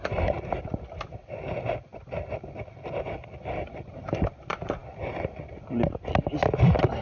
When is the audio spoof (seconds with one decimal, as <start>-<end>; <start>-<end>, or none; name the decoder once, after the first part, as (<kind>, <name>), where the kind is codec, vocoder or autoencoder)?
none